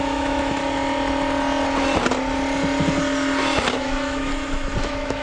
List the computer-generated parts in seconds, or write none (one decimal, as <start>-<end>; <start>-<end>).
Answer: 0.0-0.6; 3.7-4.3; 4.8-5.2